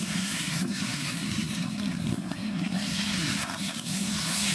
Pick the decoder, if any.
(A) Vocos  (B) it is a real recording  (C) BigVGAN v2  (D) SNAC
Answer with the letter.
D